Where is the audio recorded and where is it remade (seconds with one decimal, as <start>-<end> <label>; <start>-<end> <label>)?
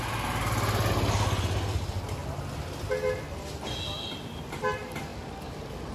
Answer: 0.0-5.9 recorded